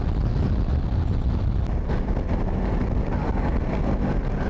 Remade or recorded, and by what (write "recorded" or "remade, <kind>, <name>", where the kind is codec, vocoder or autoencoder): recorded